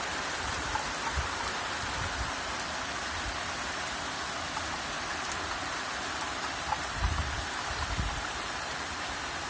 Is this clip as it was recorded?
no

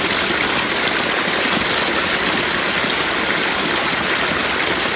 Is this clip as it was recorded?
yes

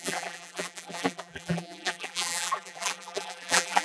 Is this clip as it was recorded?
no